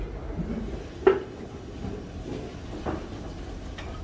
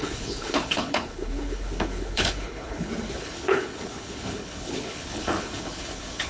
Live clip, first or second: first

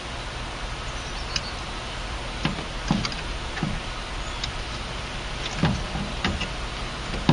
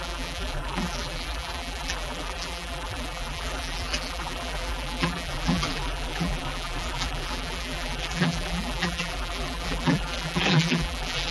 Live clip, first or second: first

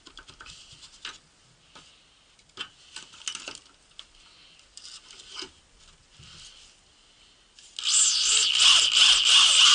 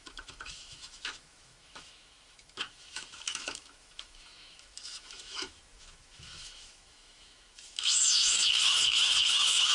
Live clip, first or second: first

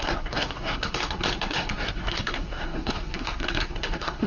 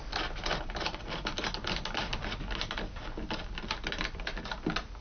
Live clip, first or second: second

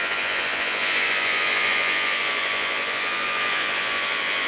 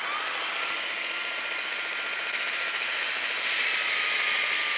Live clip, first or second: second